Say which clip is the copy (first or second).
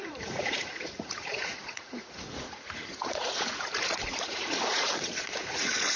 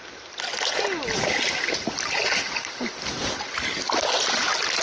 first